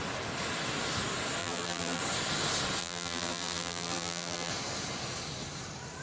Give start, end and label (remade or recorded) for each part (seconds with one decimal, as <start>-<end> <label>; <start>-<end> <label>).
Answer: 0.0-1.4 recorded; 1.4-2.0 remade; 2.0-2.8 recorded; 2.8-4.5 remade; 4.5-6.0 recorded